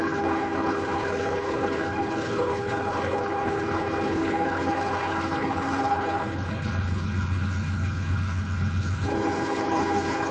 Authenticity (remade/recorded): remade